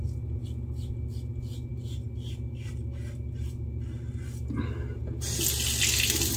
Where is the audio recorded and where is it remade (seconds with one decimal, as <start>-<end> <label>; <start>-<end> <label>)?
0.0-6.4 recorded